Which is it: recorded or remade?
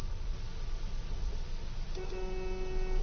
recorded